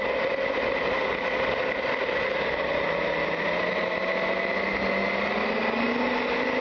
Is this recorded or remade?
recorded